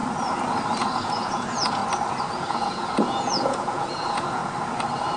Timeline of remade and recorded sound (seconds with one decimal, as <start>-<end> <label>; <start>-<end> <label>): 0.0-0.8 recorded; 0.8-1.8 remade; 1.8-2.4 recorded; 2.4-4.4 remade; 4.4-5.2 recorded

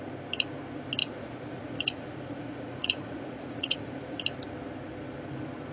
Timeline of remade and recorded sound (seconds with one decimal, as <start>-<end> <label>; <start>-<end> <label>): 0.0-1.0 recorded; 1.0-4.2 remade; 4.2-5.7 recorded